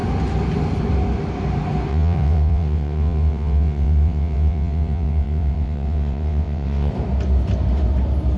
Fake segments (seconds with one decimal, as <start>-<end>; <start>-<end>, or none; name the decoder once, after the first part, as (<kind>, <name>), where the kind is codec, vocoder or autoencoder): 1.9-6.9 (vocoder, WaveNeXt)